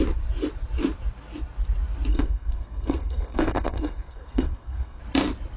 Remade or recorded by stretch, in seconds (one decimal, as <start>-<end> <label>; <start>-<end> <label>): 0.0-2.1 recorded; 2.1-5.0 remade; 5.0-5.6 recorded